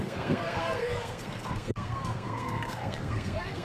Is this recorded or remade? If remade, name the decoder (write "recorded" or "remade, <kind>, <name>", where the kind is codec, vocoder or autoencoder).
remade, codec, SNAC